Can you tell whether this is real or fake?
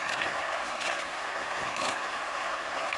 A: fake